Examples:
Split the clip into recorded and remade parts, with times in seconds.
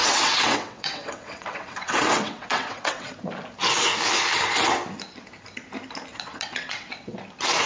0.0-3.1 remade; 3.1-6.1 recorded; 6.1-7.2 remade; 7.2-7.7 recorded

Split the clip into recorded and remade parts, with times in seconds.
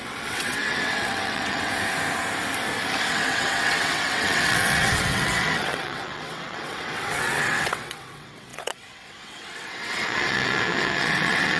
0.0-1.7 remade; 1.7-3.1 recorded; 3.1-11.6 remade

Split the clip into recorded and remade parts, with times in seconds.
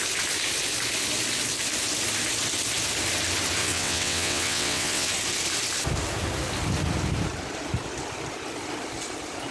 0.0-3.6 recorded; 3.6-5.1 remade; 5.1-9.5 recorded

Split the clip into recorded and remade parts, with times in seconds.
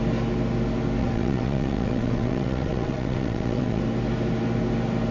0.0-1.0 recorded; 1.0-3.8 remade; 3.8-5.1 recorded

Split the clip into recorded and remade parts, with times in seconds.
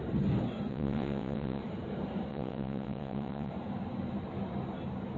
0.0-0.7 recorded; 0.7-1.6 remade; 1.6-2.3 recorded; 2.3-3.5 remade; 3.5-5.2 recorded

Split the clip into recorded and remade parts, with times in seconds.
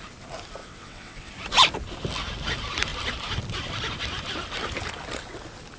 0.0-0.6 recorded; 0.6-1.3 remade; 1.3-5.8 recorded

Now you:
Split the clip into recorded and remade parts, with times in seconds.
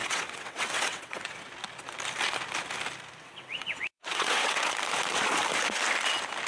0.0-1.5 remade; 1.5-3.2 recorded; 3.2-4.7 remade; 4.7-6.5 recorded